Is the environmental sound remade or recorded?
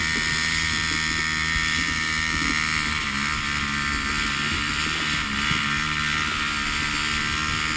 recorded